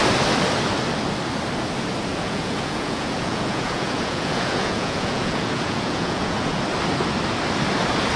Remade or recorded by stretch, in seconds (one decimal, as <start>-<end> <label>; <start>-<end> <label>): 0.0-2.1 recorded; 2.1-6.6 remade; 6.6-8.2 recorded

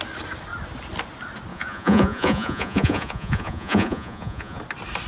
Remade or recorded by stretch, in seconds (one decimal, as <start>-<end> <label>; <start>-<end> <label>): 0.0-1.5 recorded; 1.5-4.6 remade; 4.6-5.1 recorded

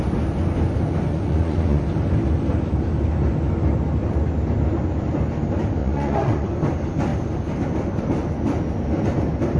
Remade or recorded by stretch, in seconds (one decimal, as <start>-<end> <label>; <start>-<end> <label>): 0.0-1.1 recorded; 1.1-1.8 remade; 1.8-5.8 recorded; 5.8-6.5 remade; 6.5-9.6 recorded

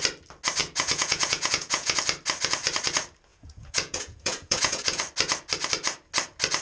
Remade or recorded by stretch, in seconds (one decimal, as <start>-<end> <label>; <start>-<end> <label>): 0.0-0.6 recorded; 0.6-2.0 remade; 2.0-3.3 recorded; 3.3-5.0 remade; 5.0-6.6 recorded

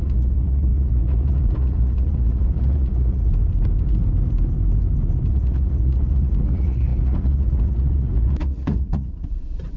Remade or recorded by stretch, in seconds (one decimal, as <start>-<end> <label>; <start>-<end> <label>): 0.0-3.3 remade; 3.3-5.3 recorded; 5.3-9.8 remade

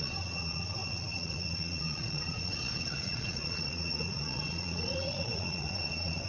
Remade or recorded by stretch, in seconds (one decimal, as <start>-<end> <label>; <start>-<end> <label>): 0.0-6.3 remade

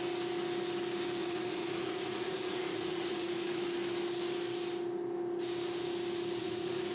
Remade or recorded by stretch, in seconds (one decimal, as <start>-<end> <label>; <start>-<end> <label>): 0.0-1.2 recorded; 1.2-3.6 remade; 3.6-6.4 recorded; 6.4-6.9 remade